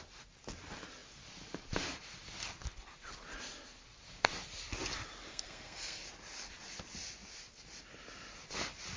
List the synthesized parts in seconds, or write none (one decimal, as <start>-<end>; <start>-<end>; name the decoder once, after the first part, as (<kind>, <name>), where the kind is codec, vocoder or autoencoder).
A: 5.3-6.0 (codec, SNAC)